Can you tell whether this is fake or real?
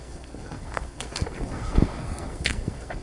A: fake